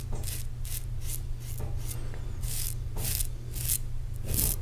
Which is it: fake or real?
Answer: real